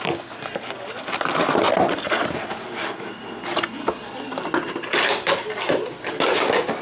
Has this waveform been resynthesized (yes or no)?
no